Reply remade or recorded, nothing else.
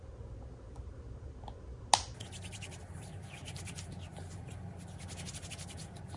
recorded